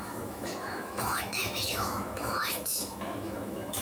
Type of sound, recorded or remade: remade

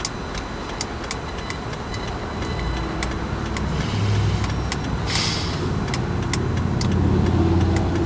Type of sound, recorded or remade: recorded